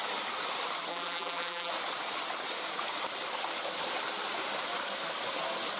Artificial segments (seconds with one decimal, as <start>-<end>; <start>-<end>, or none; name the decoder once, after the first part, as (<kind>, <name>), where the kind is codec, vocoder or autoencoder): 0.9-1.7 (vocoder, BigVGAN v2)